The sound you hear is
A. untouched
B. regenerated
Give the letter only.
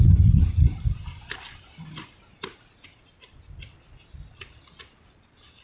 A